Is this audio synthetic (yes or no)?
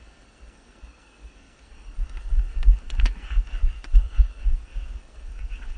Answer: yes